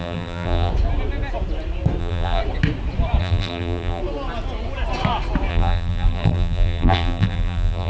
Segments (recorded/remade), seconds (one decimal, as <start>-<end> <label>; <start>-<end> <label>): 0.0-0.7 remade; 0.7-2.0 recorded; 2.0-2.4 remade; 2.4-3.2 recorded; 3.2-4.0 remade; 4.0-5.5 recorded; 5.5-7.9 remade